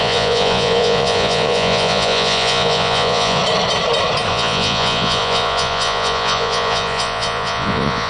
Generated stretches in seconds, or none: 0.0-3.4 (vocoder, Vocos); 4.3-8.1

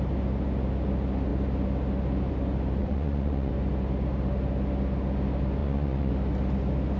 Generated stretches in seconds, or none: 2.8-3.5 (vocoder, Vocos); 5.6-6.1

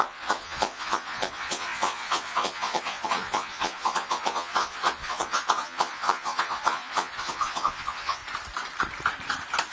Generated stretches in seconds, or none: 0.0-8.2 (vocoder, Vocos)

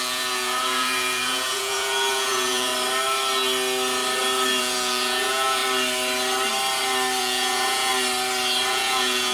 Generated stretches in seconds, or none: 0.0-2.7 (vocoder, Vocos); 4.6-5.6; 7.2-7.9; 8.7-9.3